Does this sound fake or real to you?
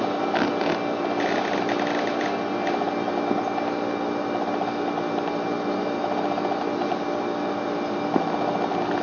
real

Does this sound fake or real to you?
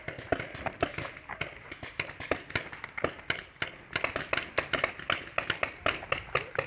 real